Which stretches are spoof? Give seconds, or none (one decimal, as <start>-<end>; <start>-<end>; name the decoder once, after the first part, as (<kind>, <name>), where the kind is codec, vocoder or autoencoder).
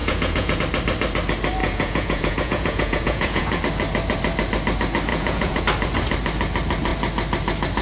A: 0.0-0.6 (vocoder, Vocos); 1.6-3.6; 5.1-5.6